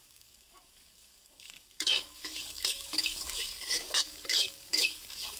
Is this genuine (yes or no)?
no